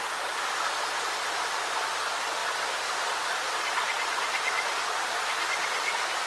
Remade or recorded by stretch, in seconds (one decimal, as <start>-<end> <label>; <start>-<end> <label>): 0.0-6.3 recorded

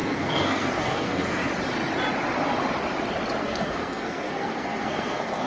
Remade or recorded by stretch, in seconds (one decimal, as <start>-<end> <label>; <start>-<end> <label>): 0.0-1.4 remade; 1.4-3.4 recorded; 3.4-5.5 remade